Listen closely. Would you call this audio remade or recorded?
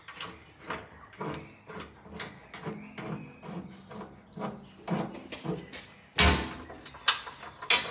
recorded